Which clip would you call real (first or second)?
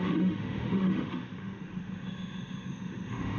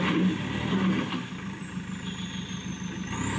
second